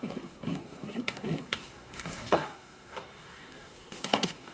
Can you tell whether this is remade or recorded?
remade